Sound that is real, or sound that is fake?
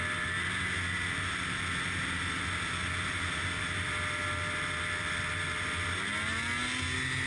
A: real